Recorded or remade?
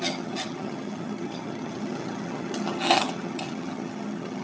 remade